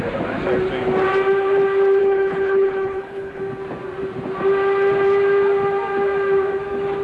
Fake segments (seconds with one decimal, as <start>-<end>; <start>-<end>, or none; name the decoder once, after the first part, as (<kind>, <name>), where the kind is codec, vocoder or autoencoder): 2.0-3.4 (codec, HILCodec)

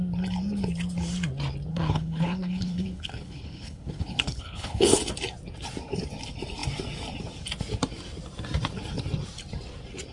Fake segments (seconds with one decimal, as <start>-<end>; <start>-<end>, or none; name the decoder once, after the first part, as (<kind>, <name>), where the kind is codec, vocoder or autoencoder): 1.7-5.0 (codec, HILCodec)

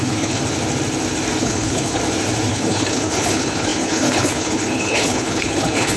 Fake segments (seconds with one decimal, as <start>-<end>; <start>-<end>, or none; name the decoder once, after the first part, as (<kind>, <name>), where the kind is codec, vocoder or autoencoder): 0.0-0.4 (codec, HILCodec); 1.4-2.0; 2.5-6.0

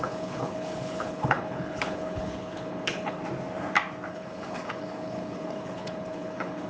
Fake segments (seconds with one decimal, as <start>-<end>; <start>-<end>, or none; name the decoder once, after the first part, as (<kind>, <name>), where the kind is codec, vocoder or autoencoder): 0.0-3.2 (codec, HILCodec); 4.1-6.7

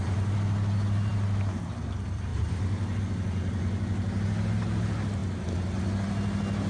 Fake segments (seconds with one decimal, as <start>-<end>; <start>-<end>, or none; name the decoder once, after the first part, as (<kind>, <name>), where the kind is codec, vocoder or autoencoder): none

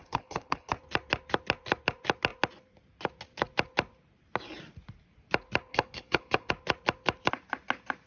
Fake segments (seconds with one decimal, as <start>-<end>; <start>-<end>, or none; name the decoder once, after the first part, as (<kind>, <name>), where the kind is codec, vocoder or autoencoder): 0.0-0.7 (codec, HILCodec); 5.7-6.5

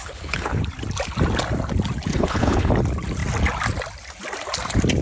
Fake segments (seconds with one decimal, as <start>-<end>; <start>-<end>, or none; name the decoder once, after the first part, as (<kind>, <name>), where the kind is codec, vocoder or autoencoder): 0.0-0.6 (codec, HILCodec); 2.1-2.7